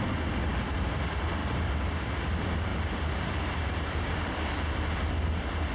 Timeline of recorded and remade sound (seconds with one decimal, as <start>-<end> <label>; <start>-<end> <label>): 0.0-1.4 recorded; 1.4-2.1 remade; 2.1-2.7 recorded; 2.7-4.5 remade; 4.5-5.7 recorded